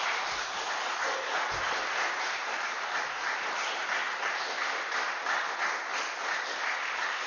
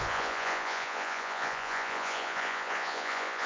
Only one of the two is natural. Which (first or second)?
first